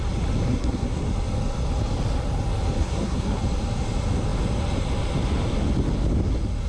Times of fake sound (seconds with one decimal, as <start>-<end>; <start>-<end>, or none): 0.5-1.0; 2.8-3.4